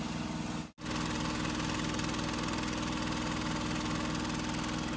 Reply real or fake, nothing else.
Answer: real